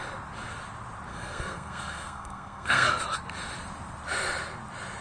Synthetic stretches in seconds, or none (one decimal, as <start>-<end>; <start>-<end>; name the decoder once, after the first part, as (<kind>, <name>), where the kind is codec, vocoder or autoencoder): 1.1-3.0 (codec, SNAC)